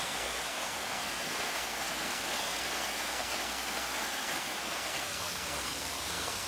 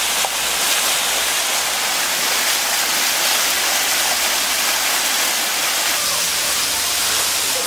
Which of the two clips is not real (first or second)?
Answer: first